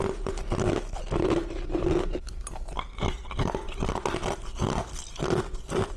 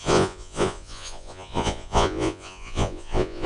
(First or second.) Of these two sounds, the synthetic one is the second